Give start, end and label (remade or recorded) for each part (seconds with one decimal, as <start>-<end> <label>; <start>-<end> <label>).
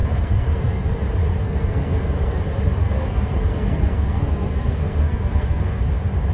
0.0-0.9 remade; 0.9-1.3 recorded; 1.3-2.4 remade; 2.4-2.8 recorded; 2.8-5.8 remade; 5.8-6.3 recorded